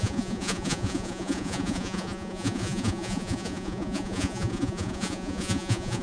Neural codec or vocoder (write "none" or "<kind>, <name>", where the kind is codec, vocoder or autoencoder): vocoder, Vocos